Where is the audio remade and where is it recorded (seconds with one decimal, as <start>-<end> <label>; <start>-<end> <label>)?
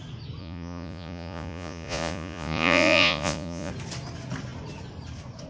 0.0-0.4 recorded; 0.4-3.7 remade; 3.7-5.5 recorded